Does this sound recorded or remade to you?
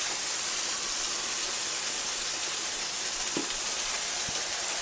recorded